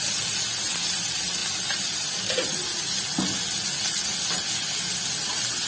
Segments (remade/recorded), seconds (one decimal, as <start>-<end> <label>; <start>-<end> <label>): 0.0-5.7 recorded